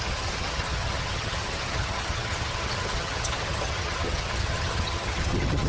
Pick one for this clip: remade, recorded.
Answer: remade